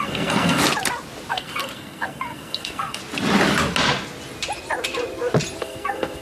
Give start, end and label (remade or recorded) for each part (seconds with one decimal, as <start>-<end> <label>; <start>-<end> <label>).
0.0-0.6 remade; 0.6-1.3 recorded; 1.3-3.0 remade; 3.0-5.6 recorded; 5.6-6.2 remade